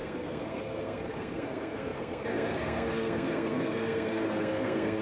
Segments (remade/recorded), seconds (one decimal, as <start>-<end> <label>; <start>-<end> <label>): 0.0-5.0 remade